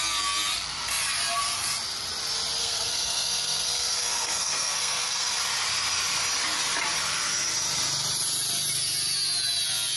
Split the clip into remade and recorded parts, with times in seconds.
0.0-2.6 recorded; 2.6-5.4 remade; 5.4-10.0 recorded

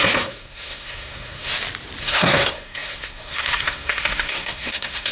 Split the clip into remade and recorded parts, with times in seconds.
0.0-1.5 remade; 1.5-2.0 recorded; 2.0-5.1 remade